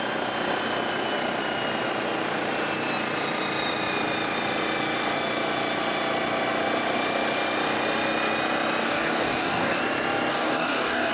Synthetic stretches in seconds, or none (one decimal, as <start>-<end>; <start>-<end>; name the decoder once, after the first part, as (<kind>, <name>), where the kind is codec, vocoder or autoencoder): 8.8-9.8 (codec, DAC); 10.3-11.1